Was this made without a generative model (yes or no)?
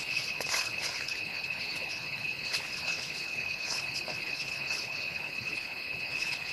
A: no